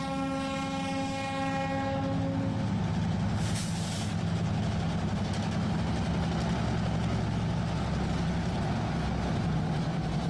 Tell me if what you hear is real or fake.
real